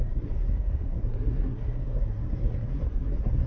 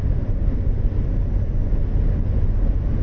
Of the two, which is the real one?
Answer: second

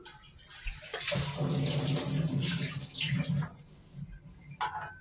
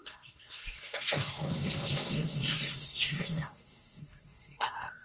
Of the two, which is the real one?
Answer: first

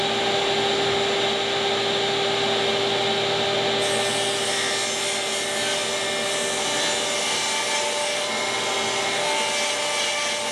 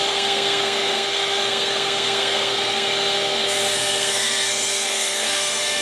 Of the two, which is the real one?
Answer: first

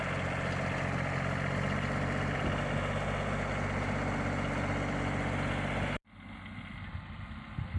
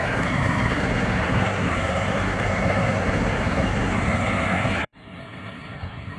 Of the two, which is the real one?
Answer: first